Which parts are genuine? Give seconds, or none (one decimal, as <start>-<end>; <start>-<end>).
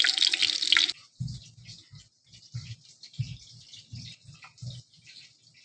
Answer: 0.0-5.6